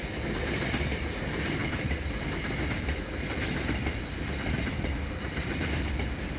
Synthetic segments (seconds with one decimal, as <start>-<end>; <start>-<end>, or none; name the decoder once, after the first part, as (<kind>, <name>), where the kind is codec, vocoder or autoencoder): none